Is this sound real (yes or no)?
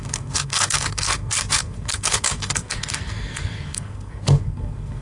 no